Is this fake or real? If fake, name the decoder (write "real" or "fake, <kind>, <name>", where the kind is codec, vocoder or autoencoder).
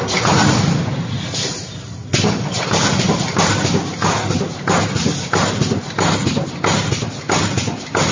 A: real